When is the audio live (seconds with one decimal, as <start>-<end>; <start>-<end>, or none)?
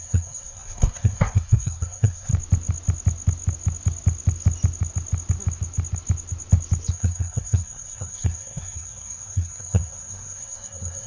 2.3-6.9